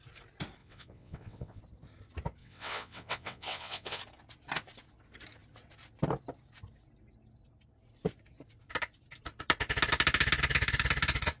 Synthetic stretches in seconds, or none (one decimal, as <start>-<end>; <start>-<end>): 0.6-1.6; 2.4-4.0